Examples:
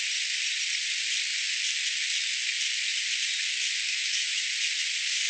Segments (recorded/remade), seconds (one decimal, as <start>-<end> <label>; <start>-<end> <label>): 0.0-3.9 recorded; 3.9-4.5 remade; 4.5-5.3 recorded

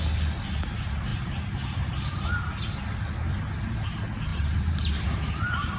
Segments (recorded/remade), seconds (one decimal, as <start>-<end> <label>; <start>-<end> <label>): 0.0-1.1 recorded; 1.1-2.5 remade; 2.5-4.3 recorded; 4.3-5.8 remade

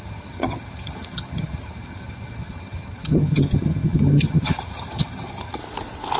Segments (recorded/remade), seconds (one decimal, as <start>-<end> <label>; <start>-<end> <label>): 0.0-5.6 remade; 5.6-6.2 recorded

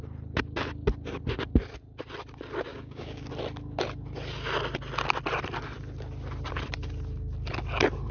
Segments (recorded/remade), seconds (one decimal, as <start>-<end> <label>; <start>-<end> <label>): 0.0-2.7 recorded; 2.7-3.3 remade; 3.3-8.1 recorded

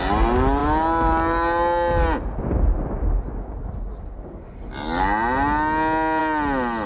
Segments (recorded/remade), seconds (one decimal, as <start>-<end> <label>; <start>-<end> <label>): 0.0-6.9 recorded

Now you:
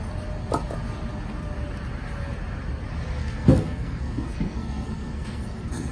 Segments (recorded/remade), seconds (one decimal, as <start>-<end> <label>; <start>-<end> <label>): 0.0-3.2 recorded; 3.2-5.9 remade